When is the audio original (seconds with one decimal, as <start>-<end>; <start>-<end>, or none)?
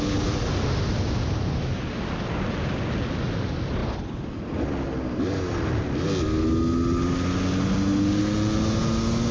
0.0-9.3